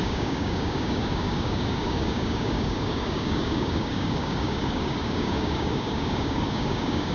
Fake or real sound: fake